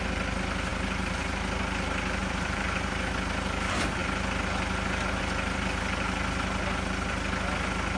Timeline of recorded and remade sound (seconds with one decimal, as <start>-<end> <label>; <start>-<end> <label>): 0.0-2.2 recorded; 2.2-3.1 remade; 3.1-8.0 recorded